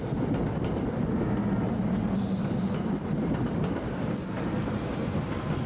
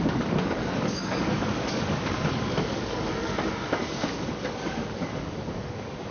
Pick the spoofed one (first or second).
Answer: second